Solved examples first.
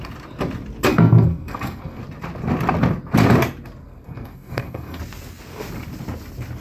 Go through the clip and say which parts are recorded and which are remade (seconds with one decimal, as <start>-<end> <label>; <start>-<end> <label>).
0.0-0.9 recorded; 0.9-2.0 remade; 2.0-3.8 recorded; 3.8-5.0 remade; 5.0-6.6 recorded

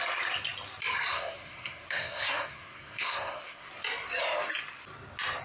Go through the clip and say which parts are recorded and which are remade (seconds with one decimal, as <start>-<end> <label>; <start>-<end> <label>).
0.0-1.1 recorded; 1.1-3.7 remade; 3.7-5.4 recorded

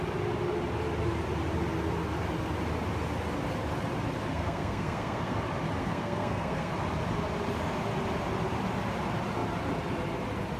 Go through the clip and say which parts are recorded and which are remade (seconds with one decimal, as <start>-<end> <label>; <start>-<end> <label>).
0.0-4.3 recorded; 4.3-5.3 remade; 5.3-5.8 recorded; 5.8-6.7 remade; 6.7-10.6 recorded

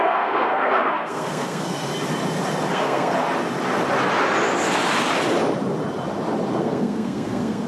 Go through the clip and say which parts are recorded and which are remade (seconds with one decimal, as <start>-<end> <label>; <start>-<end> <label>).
0.0-1.9 remade; 1.9-2.7 recorded; 2.7-3.1 remade; 3.1-6.6 recorded; 6.6-7.7 remade

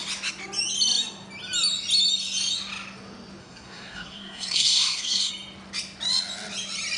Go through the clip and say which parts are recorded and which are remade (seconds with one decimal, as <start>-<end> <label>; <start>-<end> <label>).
0.0-3.4 recorded; 3.4-5.3 remade; 5.3-7.0 recorded

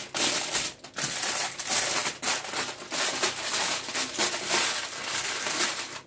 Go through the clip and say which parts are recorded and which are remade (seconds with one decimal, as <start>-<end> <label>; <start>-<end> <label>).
0.0-6.1 recorded